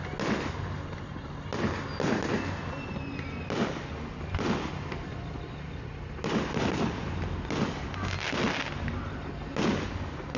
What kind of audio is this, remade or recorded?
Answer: recorded